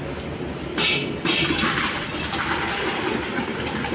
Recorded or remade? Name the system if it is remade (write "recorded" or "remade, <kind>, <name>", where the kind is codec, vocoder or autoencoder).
recorded